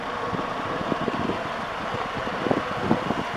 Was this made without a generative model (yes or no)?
yes